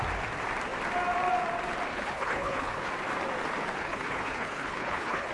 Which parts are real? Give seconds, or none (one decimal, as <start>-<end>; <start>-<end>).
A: 0.0-1.9; 2.9-3.8